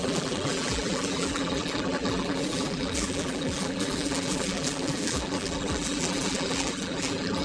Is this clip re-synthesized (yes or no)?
yes